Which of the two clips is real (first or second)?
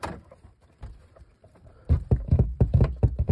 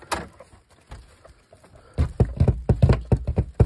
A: second